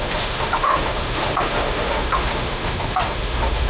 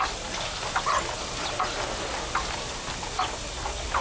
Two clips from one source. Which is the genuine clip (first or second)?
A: second